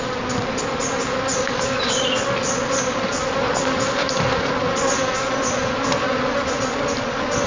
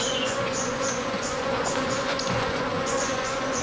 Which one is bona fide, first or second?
first